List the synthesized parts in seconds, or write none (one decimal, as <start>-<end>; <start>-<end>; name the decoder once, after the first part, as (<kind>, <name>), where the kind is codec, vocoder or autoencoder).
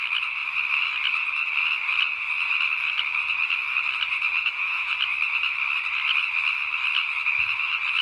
4.4-4.9 (vocoder, Vocos)